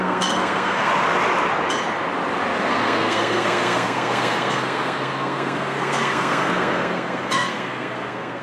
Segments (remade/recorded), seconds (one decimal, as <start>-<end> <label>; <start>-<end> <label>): 0.0-0.9 remade; 0.9-2.6 recorded; 2.6-8.4 remade